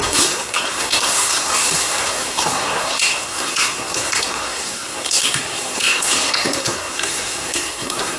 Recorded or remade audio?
remade